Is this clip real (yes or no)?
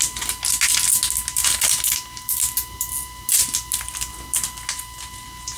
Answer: yes